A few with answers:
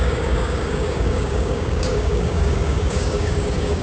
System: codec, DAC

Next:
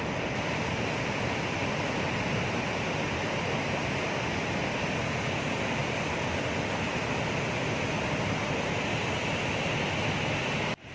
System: none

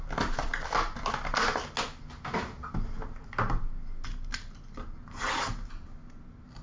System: none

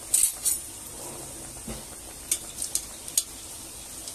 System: none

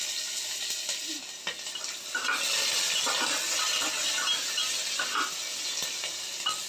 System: none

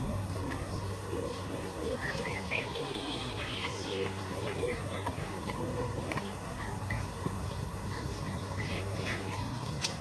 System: codec, SNAC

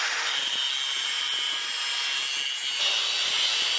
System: none